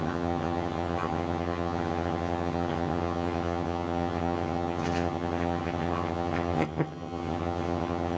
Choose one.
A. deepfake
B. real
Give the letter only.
A